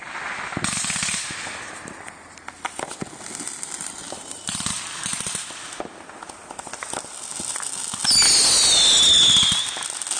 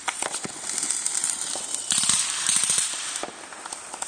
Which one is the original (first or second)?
first